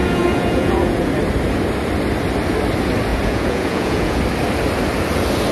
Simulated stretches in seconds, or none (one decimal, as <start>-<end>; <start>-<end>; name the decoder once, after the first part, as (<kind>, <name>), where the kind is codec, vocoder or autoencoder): 0.0-1.1 (vocoder, Vocos); 3.1-4.2

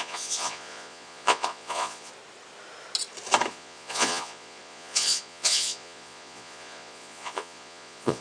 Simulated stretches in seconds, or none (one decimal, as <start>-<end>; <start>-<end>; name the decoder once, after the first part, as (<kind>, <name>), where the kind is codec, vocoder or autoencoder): 0.0-2.1 (vocoder, Vocos); 3.5-8.2

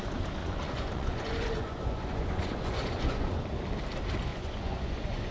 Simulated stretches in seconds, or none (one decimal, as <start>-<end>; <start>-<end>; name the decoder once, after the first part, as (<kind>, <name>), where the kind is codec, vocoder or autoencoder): 0.4-3.4 (vocoder, Vocos); 4.3-5.3

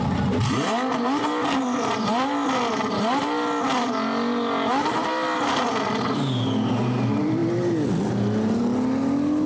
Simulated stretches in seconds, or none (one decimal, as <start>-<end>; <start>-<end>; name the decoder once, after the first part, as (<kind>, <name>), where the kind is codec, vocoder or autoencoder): none

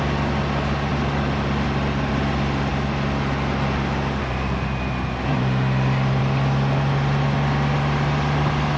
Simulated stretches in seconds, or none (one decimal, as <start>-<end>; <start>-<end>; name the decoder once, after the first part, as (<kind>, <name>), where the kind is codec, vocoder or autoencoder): none

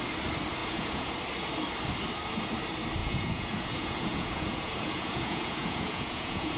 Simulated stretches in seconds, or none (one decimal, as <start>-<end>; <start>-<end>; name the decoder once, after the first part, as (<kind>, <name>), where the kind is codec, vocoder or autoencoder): 0.6-1.1 (vocoder, Vocos); 3.0-6.6